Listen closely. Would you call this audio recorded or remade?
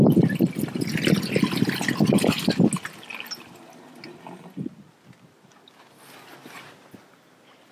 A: recorded